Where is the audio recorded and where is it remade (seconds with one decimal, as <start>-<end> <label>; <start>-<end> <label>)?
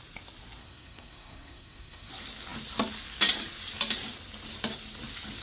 0.0-0.6 recorded; 0.6-2.1 remade; 2.1-5.4 recorded